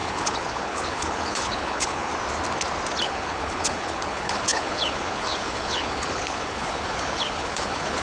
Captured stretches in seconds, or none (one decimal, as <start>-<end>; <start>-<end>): 2.1-3.0